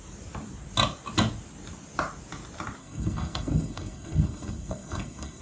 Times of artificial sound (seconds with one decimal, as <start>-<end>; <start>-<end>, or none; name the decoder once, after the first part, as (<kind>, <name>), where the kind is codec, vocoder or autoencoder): 2.8-5.4 (codec, SNAC)